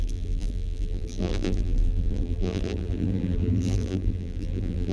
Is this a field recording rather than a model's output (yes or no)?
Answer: no